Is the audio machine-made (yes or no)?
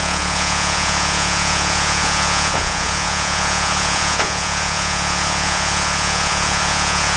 yes